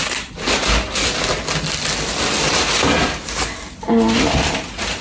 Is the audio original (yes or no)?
yes